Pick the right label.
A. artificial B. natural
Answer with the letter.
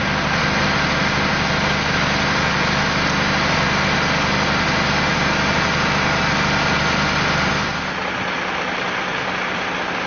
B